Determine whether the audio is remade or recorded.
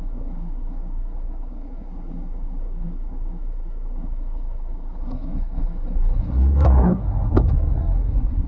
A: remade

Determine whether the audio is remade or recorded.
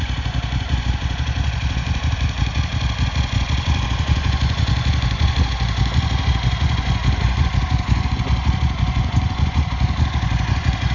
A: remade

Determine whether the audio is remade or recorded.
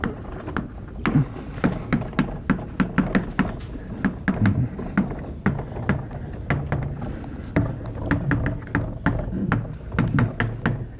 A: recorded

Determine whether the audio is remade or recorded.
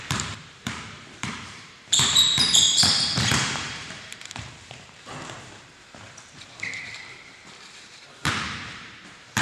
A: remade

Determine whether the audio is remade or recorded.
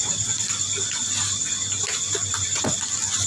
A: recorded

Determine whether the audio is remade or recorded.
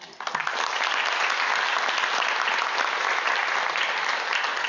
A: recorded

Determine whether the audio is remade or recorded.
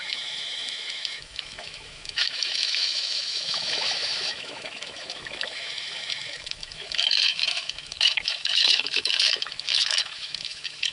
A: remade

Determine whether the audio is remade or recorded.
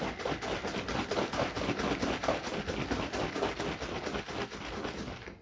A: recorded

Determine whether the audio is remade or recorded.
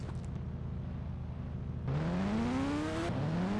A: recorded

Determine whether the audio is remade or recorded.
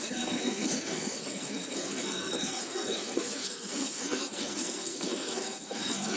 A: remade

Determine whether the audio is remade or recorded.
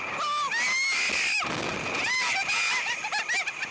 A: recorded